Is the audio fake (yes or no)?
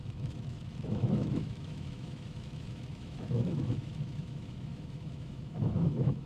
yes